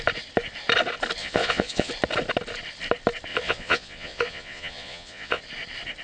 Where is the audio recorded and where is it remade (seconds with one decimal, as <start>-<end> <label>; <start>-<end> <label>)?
0.0-1.2 recorded; 1.2-1.9 remade; 1.9-3.3 recorded; 3.3-5.4 remade; 5.4-6.0 recorded

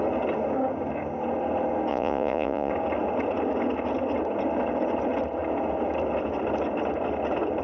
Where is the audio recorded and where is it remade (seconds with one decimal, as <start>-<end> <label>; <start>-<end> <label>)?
0.0-1.9 recorded; 1.9-2.7 remade; 2.7-7.6 recorded

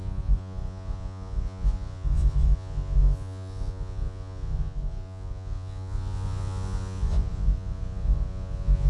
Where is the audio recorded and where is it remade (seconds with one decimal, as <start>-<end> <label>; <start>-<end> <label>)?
0.0-8.9 remade

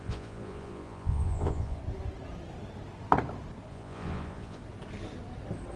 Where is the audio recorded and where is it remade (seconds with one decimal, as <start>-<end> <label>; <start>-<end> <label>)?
0.0-1.8 remade; 1.8-3.7 recorded; 3.7-4.6 remade; 4.6-5.8 recorded

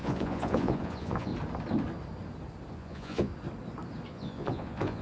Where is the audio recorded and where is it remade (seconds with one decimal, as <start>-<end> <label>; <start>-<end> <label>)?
0.0-1.3 remade; 1.3-2.7 recorded; 2.7-3.3 remade; 3.3-4.1 recorded; 4.1-5.0 remade

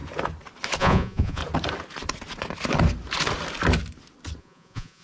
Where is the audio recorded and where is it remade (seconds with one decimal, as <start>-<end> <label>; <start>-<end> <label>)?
0.0-0.8 recorded; 0.8-1.4 remade; 1.4-4.4 recorded; 4.4-5.0 remade